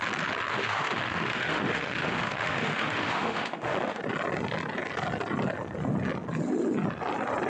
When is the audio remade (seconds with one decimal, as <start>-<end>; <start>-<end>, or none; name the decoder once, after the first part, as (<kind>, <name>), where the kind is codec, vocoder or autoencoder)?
0.5-4.0 (autoencoder, DAC-VAE)